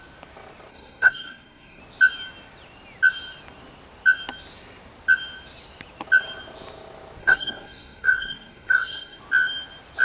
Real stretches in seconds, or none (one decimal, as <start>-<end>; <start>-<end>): 0.0-0.7; 1.8-7.2; 9.2-10.0